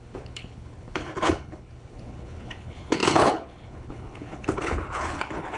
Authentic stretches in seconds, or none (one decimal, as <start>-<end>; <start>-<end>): none